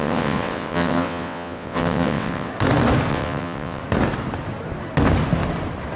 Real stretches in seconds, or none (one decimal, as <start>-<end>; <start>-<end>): 2.5-3.1; 3.8-6.0